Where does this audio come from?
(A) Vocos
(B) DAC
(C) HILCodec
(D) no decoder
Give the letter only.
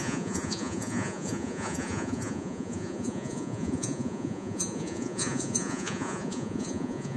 A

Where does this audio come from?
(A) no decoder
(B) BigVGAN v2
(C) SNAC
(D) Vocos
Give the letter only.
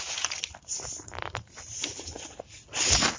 A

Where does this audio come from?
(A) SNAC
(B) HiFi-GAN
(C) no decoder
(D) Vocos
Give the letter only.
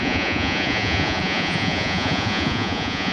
D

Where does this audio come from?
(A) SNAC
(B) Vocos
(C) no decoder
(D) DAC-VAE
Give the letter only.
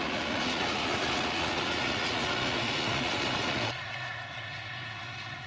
B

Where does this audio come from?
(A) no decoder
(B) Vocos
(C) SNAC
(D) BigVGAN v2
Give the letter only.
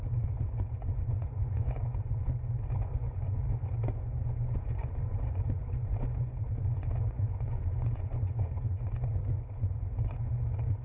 B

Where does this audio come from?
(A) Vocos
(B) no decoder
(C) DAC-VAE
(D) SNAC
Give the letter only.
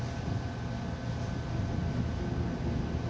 B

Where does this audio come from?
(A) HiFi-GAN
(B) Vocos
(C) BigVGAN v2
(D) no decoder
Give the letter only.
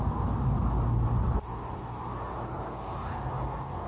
D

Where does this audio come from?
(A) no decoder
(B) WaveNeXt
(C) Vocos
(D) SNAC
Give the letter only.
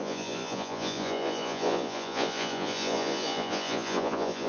C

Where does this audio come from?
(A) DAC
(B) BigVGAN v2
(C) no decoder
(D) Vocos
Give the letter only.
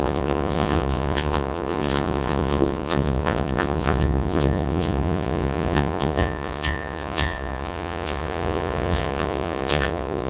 D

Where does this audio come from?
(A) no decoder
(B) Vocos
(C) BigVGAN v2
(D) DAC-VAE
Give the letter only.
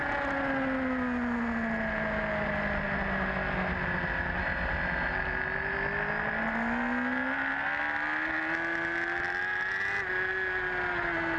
A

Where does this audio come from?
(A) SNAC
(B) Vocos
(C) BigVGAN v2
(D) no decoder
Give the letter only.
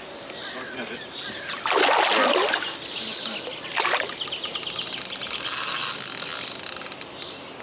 D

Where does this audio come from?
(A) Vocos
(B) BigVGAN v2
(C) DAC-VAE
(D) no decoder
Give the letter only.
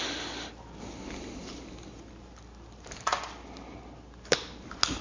D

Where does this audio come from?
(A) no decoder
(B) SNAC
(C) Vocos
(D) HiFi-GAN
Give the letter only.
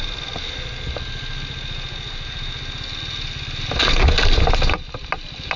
A